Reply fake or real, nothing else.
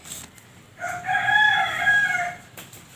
fake